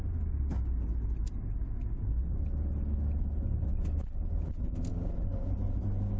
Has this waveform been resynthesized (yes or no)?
no